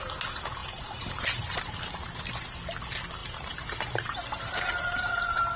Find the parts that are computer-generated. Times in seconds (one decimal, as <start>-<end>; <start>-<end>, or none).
0.6-2.2; 3.2-5.6

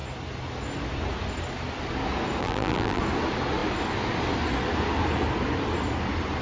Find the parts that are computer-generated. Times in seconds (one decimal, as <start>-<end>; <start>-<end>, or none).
2.4-3.0

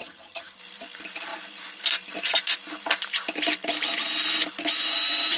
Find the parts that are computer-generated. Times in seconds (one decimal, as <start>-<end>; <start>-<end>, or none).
0.0-0.6

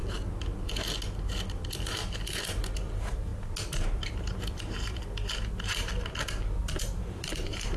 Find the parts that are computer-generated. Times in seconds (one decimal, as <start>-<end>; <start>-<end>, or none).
2.1-3.3; 3.9-5.9; 6.6-7.8

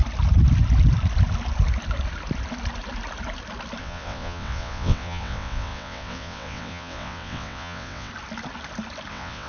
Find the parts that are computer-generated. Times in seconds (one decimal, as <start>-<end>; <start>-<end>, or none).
3.8-8.1; 9.1-9.5